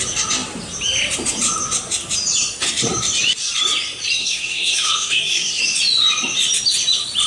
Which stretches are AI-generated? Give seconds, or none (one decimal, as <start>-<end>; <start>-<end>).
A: 4.2-5.6